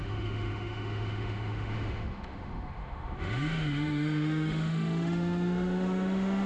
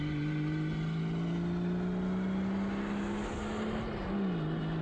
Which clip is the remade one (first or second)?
first